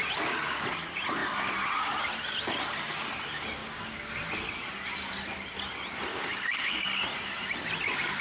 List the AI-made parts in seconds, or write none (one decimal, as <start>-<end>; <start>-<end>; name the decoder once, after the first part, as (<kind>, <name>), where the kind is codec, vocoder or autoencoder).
3.6-4.1 (codec, DAC); 6.1-6.9